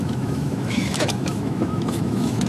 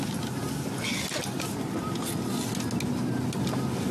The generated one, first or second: first